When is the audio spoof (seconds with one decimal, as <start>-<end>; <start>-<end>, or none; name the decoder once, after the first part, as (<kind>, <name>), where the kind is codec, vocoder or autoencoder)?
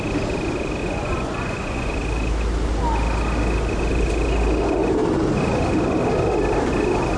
0.8-1.9 (vocoder, Vocos)